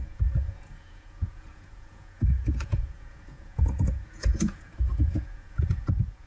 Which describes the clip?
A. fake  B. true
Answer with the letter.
A